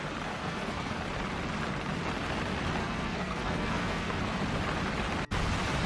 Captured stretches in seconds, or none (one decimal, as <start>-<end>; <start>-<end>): 0.0-0.4; 1.0-2.8; 4.2-5.9

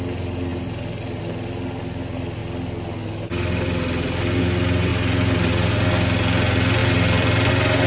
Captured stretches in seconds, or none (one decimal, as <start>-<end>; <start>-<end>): 0.0-0.5; 1.2-6.8; 7.5-7.9

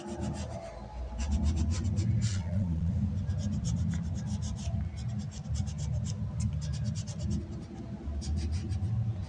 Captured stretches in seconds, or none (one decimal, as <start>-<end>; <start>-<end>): 0.0-2.3; 2.9-9.3